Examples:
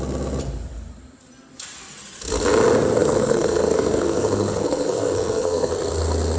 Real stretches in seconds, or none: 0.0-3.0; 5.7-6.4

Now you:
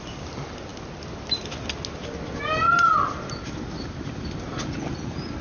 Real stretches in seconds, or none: 0.0-5.4

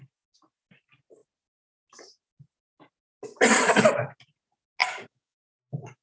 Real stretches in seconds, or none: 0.0-4.8

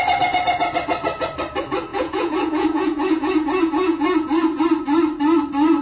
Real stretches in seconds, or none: 0.0-1.9; 4.6-5.8

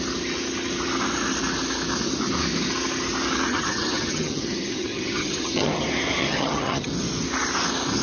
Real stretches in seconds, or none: 0.0-3.5; 5.8-6.2; 6.9-8.0

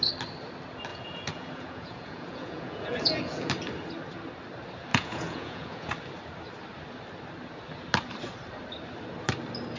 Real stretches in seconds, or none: 0.0-0.9; 3.5-4.9; 5.9-9.8

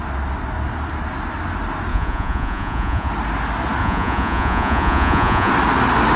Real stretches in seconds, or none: 0.0-1.9; 3.1-3.8; 5.5-6.2

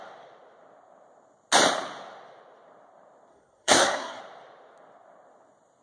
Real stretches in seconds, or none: 0.0-3.3; 4.2-5.8